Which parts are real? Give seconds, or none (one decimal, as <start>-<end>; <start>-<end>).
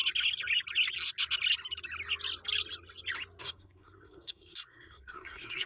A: 0.0-3.4